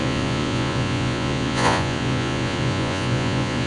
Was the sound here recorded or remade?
remade